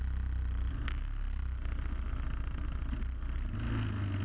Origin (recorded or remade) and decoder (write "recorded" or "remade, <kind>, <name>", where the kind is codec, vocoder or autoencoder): recorded